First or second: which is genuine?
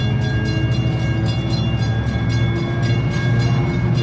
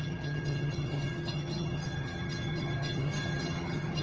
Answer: first